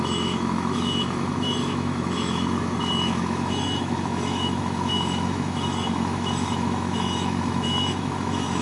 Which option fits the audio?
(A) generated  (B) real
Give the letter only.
A